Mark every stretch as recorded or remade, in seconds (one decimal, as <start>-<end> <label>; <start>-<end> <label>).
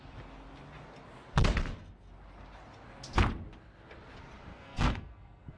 0.0-4.5 recorded; 4.5-5.6 remade